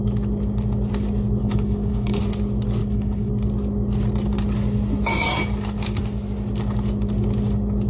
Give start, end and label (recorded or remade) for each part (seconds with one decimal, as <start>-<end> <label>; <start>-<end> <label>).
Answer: 0.0-1.4 recorded; 1.4-2.2 remade; 2.2-2.8 recorded; 2.8-3.3 remade; 3.3-7.9 recorded